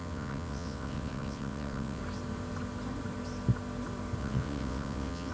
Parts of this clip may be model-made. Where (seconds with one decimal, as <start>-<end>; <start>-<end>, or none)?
0.0-2.0; 4.2-5.3